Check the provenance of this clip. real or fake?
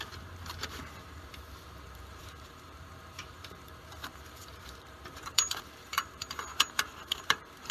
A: fake